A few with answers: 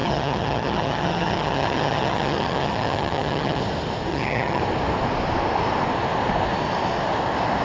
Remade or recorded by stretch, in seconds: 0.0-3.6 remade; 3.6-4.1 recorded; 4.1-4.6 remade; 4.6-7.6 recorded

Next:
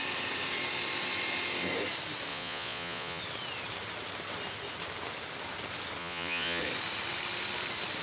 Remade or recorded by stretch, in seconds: 0.0-2.3 recorded; 2.3-3.2 remade; 3.2-6.0 recorded; 6.0-6.6 remade; 6.6-8.0 recorded

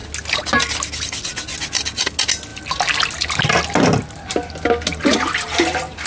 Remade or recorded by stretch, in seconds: 0.0-6.1 recorded

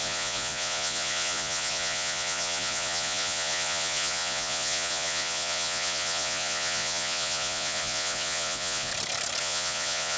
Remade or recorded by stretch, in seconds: 0.0-8.9 remade; 8.9-9.4 recorded; 9.4-10.2 remade